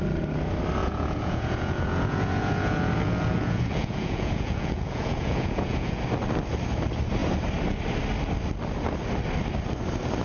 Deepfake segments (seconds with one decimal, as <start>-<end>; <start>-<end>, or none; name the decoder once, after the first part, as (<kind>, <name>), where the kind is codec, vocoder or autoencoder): 0.8-6.0 (vocoder, Vocos)